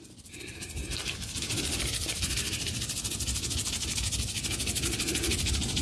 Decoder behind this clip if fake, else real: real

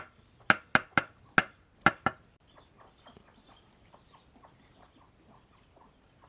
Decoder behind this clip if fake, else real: real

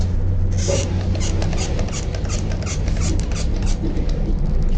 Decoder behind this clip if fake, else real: real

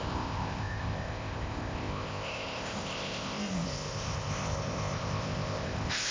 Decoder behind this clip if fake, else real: fake, codec, ZipCodec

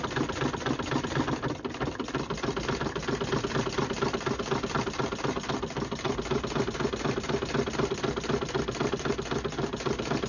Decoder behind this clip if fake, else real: real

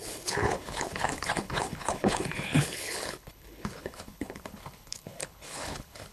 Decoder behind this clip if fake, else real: fake, codec, HILCodec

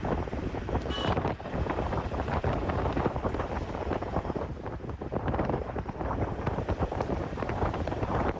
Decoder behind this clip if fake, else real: fake, vocoder, BigVGAN v2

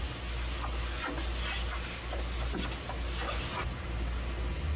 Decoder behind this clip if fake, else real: real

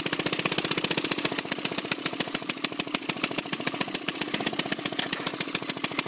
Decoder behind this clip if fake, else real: real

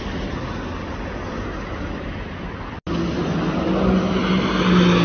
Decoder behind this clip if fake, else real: real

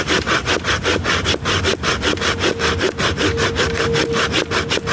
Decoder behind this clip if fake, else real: real